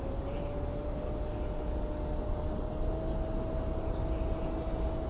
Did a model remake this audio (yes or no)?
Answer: no